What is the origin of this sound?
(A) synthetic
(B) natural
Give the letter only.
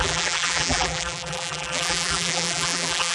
A